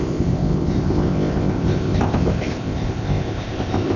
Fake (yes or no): yes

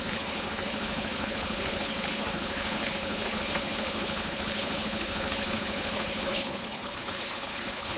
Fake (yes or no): yes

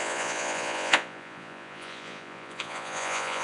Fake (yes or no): yes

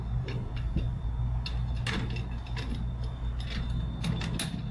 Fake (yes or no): no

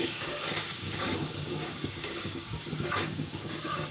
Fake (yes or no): yes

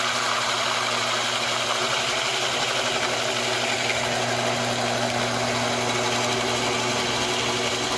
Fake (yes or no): no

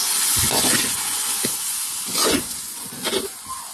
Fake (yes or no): yes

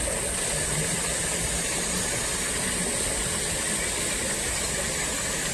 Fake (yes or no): no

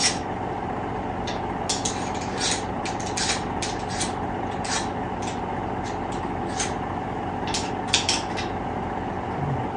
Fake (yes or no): no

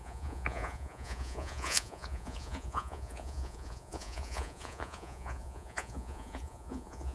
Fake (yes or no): yes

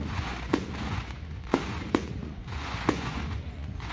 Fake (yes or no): yes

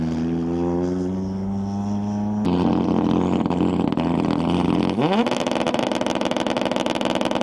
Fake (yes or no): no